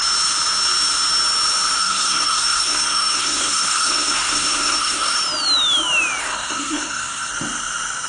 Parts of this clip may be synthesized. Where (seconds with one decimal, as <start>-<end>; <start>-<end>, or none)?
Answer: 1.8-5.2; 6.2-7.3